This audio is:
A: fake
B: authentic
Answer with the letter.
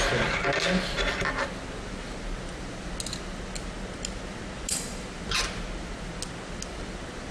B